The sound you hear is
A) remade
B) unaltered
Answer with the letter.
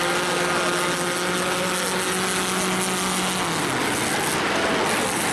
B